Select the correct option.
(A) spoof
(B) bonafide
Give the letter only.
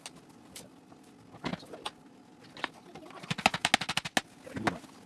B